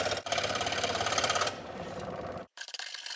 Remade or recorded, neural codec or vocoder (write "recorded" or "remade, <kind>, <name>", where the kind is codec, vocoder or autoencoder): remade, vocoder, BigVGAN v2